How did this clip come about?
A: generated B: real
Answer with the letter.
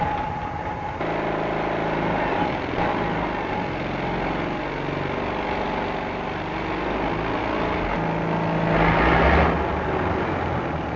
B